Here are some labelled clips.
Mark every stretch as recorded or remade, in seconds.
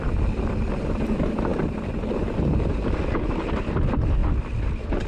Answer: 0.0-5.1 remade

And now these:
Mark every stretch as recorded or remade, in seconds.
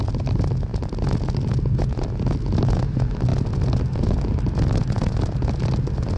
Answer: 0.0-6.2 recorded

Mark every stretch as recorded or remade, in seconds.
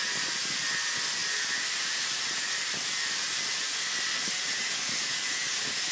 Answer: 0.0-1.2 recorded; 1.2-3.6 remade; 3.6-5.9 recorded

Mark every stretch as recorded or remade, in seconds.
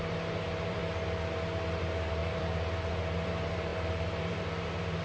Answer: 0.0-0.8 remade; 0.8-1.8 recorded; 1.8-5.0 remade